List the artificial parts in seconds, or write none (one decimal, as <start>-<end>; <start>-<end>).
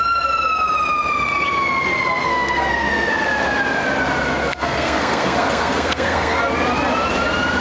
2.2-3.1; 4.4-6.4